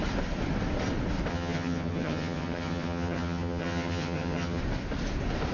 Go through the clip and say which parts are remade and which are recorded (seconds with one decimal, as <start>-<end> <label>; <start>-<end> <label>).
0.0-1.3 recorded; 1.3-4.6 remade; 4.6-5.5 recorded